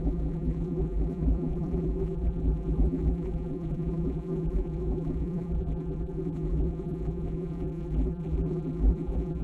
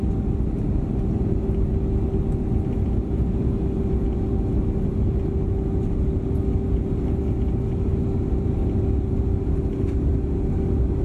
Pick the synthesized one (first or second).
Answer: first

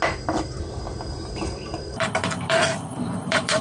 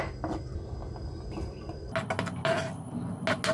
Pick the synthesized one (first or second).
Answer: first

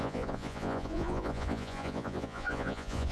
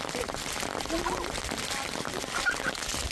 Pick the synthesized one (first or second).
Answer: first